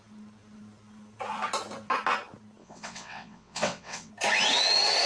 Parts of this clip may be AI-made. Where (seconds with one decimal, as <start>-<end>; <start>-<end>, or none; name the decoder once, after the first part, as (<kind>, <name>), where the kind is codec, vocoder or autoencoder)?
2.6-4.1 (vocoder, WaveNeXt)